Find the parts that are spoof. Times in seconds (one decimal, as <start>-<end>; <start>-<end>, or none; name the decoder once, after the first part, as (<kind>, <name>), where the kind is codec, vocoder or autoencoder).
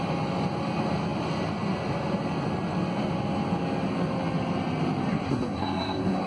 5.1-6.3 (codec, SNAC)